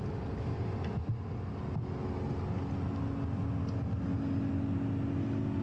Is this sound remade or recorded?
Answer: recorded